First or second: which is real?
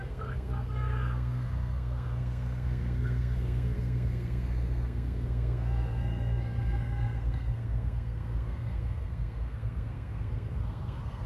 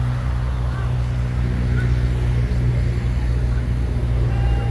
second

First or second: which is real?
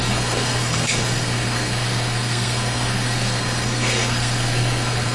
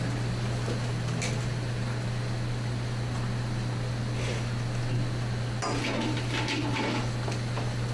second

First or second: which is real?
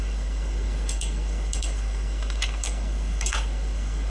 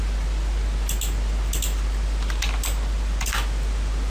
second